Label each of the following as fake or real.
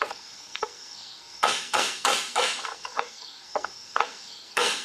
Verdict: fake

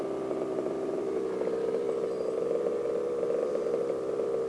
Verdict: real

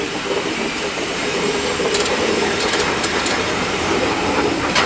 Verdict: fake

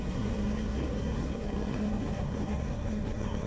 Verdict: fake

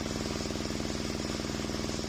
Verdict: real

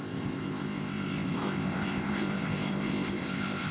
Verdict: fake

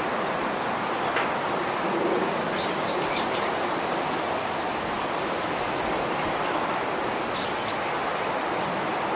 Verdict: real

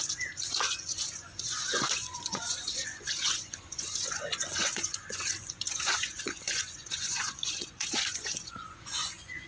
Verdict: fake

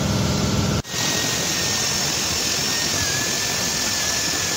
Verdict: real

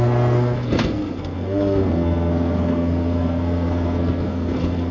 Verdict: fake